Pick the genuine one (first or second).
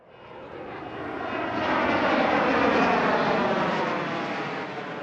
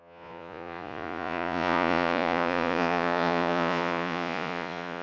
first